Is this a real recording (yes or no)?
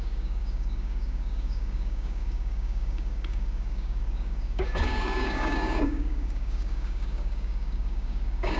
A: no